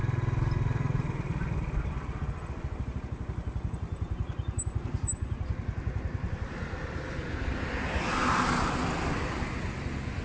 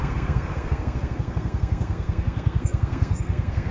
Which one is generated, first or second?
second